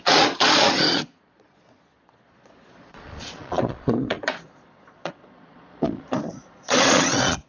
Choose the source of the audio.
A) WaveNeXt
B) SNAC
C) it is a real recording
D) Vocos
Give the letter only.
D